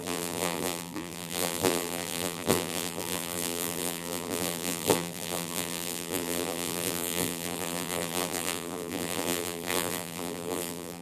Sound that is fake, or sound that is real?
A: fake